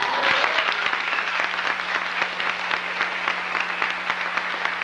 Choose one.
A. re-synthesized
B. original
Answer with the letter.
B